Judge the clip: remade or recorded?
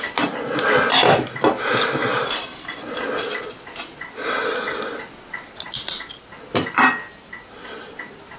recorded